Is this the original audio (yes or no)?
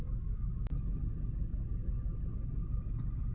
yes